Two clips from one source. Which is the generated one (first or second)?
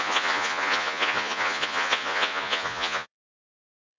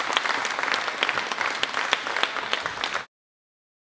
first